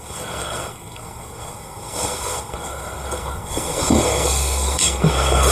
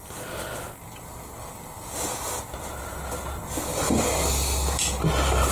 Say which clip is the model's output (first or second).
first